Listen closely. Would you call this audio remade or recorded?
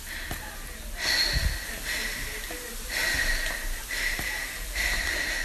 recorded